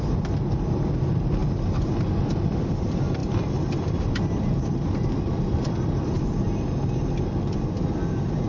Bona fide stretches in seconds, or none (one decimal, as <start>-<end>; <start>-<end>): 0.0-1.4; 1.9-3.2; 7.7-8.5